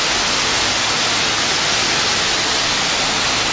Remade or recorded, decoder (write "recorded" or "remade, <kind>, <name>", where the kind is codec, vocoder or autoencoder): recorded